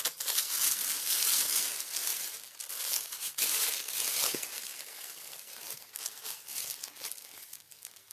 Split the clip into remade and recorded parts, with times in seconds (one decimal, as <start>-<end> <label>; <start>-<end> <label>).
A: 0.0-8.1 remade